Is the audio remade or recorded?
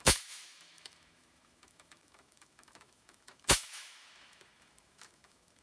remade